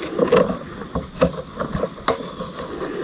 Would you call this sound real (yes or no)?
no